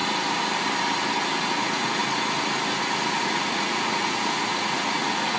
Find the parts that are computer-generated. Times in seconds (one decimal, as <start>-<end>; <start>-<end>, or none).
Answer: 1.4-2.0; 3.2-5.4